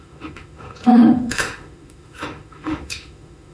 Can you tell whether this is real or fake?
fake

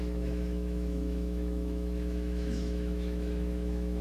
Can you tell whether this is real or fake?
fake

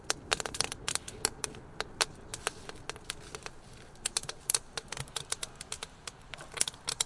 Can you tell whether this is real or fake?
real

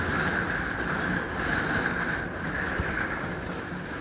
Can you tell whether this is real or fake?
real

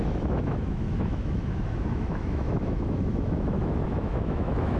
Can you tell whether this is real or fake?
fake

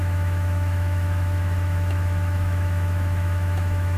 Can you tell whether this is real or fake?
fake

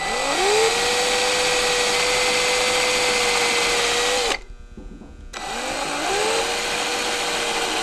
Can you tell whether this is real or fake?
real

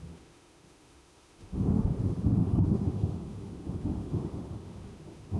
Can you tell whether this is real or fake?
fake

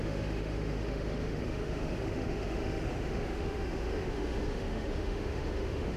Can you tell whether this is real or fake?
fake